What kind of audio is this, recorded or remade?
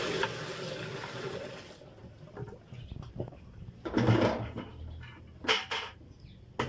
recorded